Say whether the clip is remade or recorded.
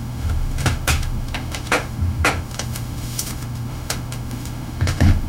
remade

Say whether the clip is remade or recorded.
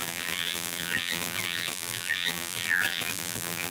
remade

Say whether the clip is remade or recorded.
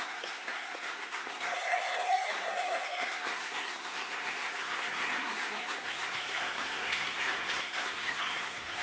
remade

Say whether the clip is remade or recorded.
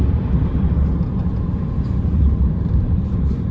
remade